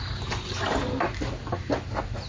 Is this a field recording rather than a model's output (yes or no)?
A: yes